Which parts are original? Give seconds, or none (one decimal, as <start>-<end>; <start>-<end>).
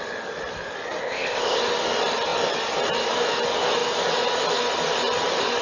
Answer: 0.0-1.0; 1.6-5.6